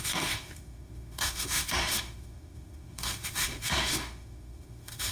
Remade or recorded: remade